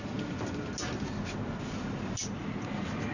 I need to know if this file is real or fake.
real